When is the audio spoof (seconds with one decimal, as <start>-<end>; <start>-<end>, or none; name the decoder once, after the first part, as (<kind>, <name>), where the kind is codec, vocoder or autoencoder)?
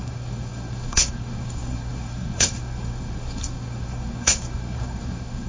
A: 0.0-5.5 (codec, SNAC)